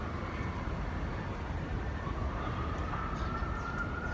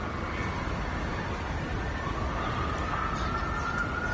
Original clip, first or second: second